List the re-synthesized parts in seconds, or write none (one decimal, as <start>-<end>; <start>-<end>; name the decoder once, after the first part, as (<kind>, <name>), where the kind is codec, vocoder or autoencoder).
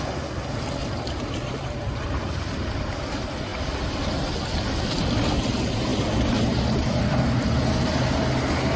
0.8-3.0 (vocoder, BigVGAN v2); 5.9-8.2